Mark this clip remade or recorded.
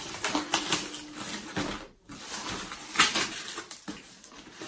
recorded